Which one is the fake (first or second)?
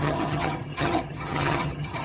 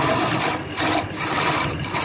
first